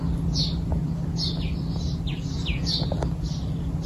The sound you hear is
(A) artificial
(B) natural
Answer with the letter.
B